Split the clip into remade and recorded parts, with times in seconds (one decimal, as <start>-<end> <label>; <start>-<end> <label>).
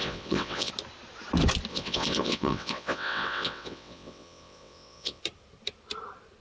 0.0-0.7 remade; 0.7-1.7 recorded; 1.7-5.2 remade; 5.2-6.4 recorded